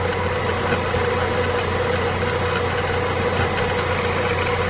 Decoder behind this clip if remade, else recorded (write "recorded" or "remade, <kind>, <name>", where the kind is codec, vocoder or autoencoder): recorded